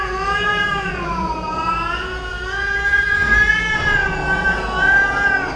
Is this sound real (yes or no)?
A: no